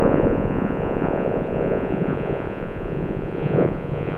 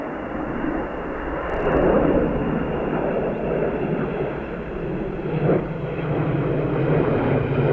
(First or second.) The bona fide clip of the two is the second